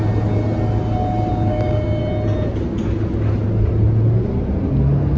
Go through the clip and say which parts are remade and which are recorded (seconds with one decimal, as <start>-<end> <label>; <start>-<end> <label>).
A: 0.0-1.3 recorded; 1.3-2.0 remade; 2.0-5.2 recorded